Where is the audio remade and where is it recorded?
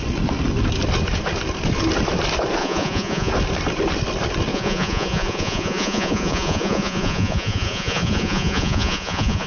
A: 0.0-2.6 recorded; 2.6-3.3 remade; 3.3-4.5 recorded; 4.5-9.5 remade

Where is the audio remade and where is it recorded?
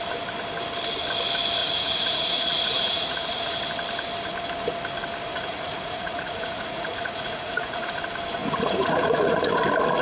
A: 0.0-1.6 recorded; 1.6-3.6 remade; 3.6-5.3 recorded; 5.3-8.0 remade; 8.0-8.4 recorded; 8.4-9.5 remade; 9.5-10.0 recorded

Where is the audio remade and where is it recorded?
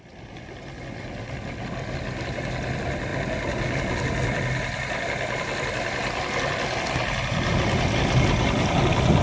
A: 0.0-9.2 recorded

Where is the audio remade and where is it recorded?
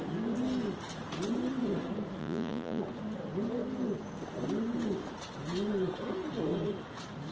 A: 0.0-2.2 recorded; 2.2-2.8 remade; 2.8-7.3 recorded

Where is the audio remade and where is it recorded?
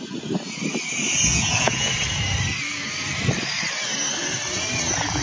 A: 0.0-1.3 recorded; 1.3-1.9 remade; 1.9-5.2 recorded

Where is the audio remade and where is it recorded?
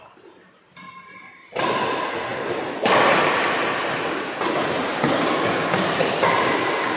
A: 0.0-7.0 recorded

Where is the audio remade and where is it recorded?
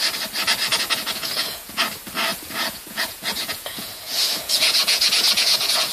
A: 0.0-0.7 recorded; 0.7-1.8 remade; 1.8-2.3 recorded; 2.3-5.9 remade